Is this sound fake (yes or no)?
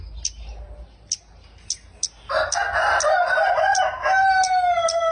no